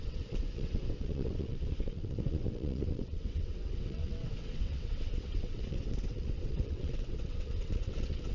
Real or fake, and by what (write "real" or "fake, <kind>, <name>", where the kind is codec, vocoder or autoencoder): fake, vocoder, WaveNeXt